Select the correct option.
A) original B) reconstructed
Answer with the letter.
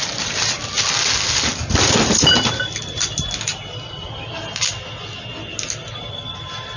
A